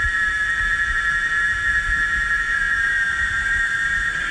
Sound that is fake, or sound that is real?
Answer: fake